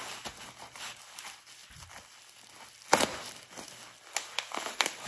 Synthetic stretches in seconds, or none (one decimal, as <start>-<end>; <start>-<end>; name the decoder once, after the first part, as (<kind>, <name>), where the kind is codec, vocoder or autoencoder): none